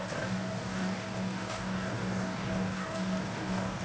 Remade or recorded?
remade